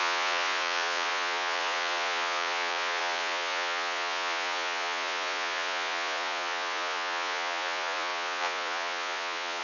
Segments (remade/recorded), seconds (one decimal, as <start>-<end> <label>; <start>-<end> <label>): 0.0-9.6 remade